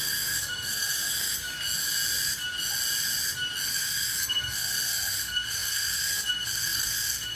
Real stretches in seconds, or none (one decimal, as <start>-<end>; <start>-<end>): 1.4-3.7